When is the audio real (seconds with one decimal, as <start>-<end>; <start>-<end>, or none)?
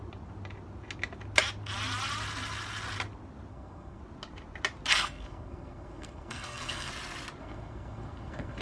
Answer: 0.0-3.5; 4.0-4.9; 6.9-7.4